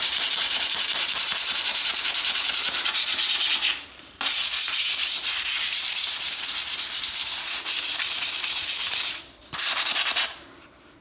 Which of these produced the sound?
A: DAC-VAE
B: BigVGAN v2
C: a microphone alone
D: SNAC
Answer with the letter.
B